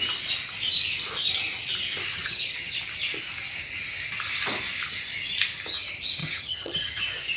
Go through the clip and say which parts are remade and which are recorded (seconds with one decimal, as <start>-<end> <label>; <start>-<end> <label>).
0.0-2.1 recorded; 2.1-2.8 remade; 2.8-6.2 recorded; 6.2-7.0 remade; 7.0-7.4 recorded